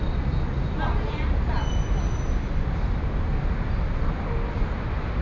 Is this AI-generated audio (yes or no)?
no